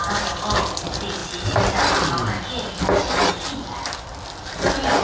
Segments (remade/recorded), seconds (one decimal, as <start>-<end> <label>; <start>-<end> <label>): 0.0-5.0 recorded